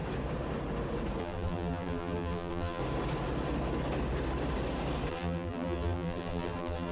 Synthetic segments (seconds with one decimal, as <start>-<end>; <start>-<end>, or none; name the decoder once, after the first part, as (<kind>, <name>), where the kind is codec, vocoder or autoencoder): 1.2-2.8 (vocoder, BigVGAN v2); 5.1-6.9